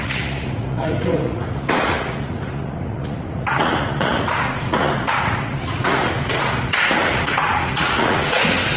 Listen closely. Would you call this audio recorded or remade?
remade